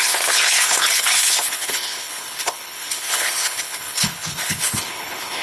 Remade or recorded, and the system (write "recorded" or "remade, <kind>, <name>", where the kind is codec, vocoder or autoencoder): remade, codec, HILCodec